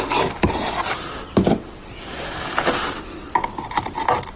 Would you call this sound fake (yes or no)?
no